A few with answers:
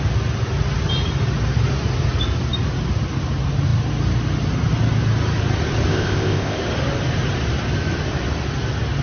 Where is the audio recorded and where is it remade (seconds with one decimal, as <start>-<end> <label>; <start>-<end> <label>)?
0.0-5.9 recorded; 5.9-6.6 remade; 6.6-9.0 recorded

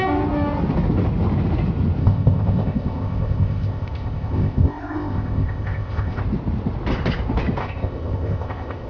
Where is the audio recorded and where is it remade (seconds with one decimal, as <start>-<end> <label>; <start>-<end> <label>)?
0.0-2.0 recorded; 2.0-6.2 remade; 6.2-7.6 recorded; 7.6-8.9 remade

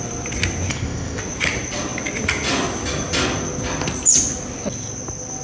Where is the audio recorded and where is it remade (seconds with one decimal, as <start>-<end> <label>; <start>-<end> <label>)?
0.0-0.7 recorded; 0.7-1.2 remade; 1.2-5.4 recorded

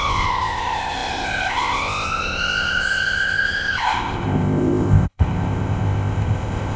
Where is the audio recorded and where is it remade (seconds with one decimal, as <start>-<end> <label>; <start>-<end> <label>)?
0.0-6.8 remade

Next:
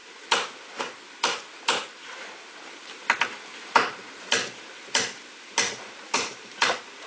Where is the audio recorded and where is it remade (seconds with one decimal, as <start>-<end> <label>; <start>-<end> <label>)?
0.0-7.1 recorded